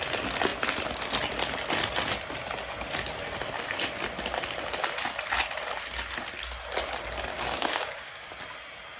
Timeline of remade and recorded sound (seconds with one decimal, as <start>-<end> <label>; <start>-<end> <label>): 0.0-7.3 recorded; 7.3-8.3 remade; 8.3-9.0 recorded